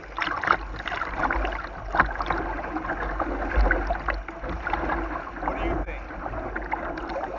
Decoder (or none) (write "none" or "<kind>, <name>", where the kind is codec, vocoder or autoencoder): none